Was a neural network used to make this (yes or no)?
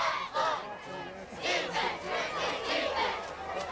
no